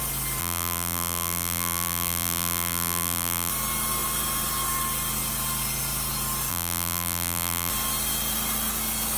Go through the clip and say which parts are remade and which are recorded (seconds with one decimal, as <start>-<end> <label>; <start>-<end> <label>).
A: 0.0-0.4 recorded; 0.4-3.5 remade; 3.5-6.5 recorded; 6.5-7.7 remade; 7.7-9.2 recorded